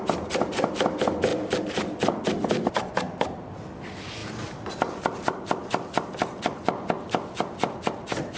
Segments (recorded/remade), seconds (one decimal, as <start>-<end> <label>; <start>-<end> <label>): 0.0-8.4 recorded